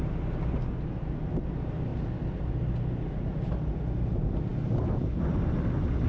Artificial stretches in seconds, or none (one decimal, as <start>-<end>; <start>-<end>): none